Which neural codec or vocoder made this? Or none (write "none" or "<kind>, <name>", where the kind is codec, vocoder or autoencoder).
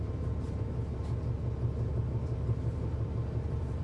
none